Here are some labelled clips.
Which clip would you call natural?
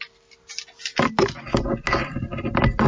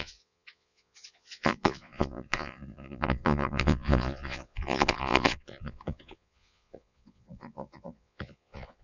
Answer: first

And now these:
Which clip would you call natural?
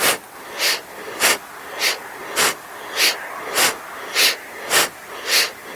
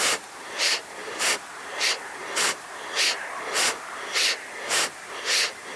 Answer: first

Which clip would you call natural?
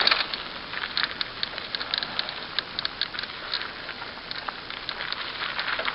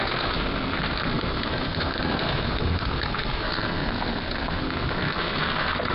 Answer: first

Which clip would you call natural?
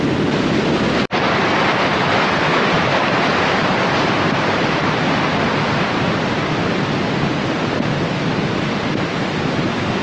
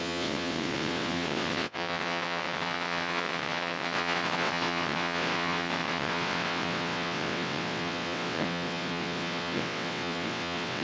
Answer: first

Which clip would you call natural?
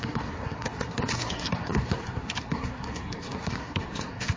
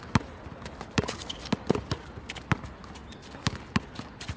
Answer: second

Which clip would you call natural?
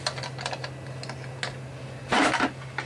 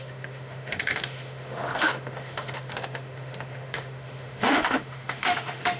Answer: first